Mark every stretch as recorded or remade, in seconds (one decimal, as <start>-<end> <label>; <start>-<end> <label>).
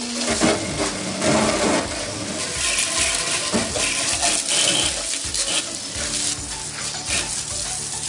0.0-8.1 recorded